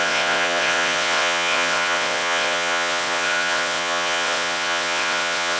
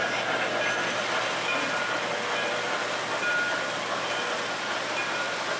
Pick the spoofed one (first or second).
first